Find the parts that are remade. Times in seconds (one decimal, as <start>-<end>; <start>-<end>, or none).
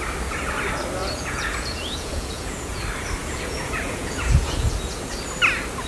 1.0-2.8; 3.2-4.7